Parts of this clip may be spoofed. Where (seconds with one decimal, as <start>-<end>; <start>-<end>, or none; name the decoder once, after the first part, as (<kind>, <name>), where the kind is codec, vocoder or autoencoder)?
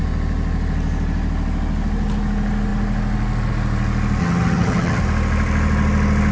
4.2-5.0 (vocoder, HiFi-GAN)